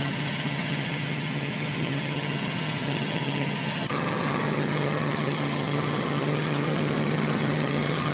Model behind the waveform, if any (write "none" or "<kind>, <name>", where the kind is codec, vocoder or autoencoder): vocoder, HiFi-GAN